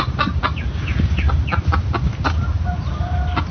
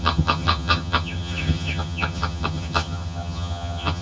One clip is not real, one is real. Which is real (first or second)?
first